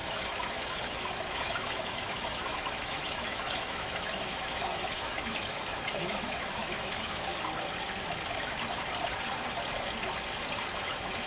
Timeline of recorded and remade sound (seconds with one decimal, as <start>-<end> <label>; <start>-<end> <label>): 0.0-7.3 remade; 7.3-10.8 recorded; 10.8-11.3 remade